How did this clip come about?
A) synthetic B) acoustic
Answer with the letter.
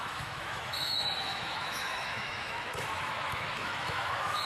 A